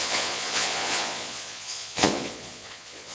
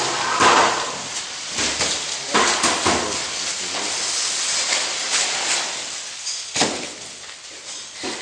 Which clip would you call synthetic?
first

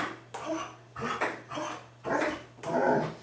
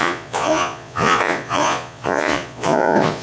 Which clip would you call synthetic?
second